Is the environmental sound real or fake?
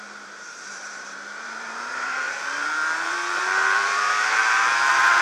fake